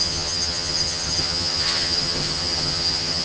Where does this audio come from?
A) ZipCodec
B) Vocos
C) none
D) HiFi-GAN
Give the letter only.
D